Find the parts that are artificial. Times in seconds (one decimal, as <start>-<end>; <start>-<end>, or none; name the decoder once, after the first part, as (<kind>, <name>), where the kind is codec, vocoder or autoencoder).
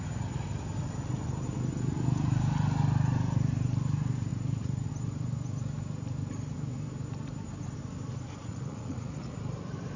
4.3-4.9 (vocoder, Vocos); 8.4-9.4